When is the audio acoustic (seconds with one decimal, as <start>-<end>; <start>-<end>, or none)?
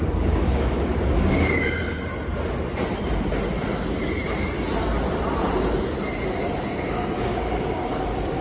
2.1-6.4